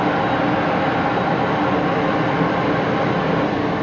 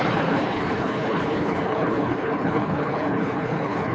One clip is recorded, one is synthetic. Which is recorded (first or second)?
first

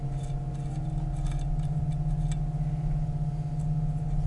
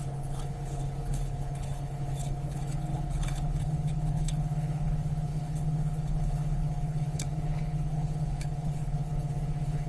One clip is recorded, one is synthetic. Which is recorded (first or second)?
first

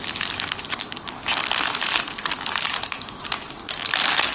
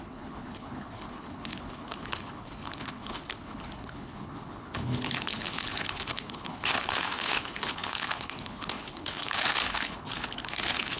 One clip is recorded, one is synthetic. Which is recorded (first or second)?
first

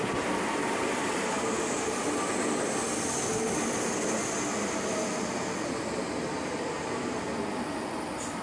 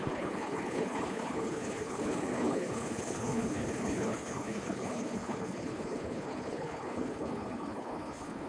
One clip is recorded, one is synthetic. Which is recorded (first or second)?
first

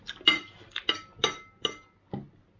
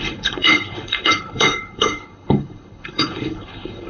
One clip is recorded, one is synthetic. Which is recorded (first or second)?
first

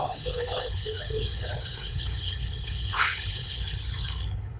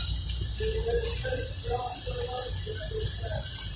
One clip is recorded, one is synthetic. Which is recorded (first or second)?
second